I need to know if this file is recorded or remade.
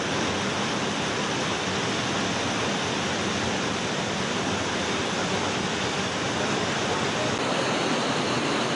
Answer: recorded